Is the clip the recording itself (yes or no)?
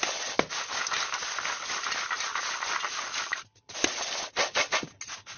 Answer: yes